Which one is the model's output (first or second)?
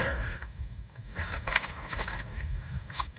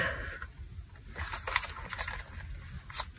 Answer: first